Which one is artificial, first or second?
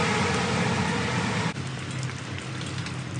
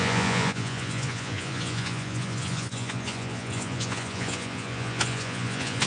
second